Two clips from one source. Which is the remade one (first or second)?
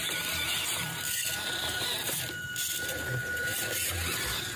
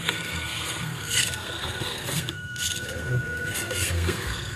second